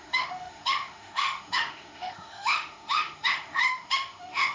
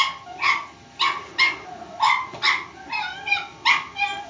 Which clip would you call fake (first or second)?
first